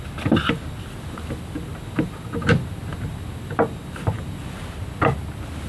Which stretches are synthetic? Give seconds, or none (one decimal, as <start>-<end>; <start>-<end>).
none